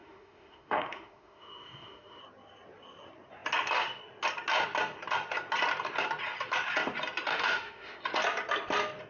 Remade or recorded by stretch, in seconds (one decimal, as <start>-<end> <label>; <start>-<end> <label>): 0.0-2.2 remade; 2.2-7.3 recorded; 7.3-8.0 remade; 8.0-9.1 recorded